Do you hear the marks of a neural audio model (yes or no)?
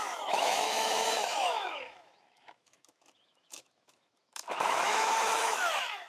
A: yes